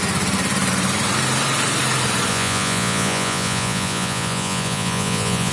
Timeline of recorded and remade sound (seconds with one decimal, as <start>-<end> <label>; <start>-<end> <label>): 0.0-2.3 recorded; 2.3-5.5 remade